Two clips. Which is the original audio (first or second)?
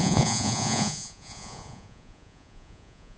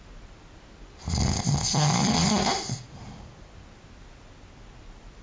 second